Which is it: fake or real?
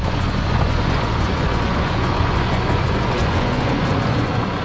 fake